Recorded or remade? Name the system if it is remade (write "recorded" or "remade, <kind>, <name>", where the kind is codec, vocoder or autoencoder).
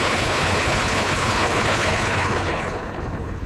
remade, codec, HILCodec